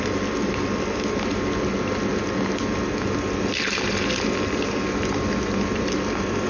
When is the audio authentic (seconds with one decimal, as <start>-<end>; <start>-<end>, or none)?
0.0-6.5